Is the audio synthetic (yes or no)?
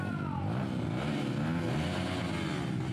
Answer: no